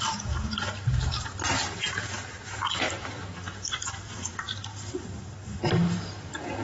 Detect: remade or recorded remade